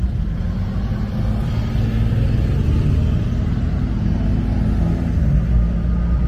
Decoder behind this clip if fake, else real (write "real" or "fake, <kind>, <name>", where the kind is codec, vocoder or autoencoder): real